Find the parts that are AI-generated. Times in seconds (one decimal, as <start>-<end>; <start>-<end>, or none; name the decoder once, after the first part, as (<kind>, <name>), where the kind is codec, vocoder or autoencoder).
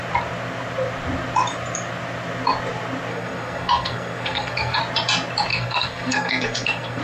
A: 3.1-4.8 (codec, SNAC); 5.5-7.0